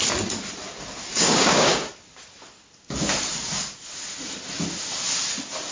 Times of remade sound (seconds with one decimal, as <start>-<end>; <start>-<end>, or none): 1.1-1.9